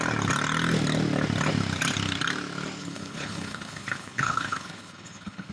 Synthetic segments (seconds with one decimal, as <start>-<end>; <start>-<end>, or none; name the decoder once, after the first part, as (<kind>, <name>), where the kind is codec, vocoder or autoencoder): 2.8-5.5 (codec, HILCodec)